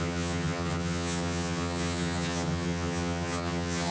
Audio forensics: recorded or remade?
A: remade